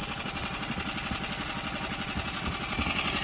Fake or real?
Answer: real